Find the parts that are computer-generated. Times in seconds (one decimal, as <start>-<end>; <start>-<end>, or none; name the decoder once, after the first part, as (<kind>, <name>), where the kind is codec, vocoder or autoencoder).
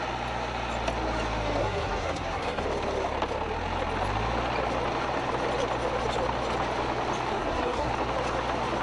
1.6-2.6 (codec, SNAC); 7.3-7.9